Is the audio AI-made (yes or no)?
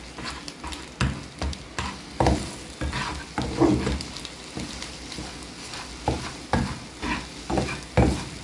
no